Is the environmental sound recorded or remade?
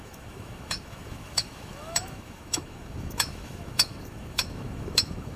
remade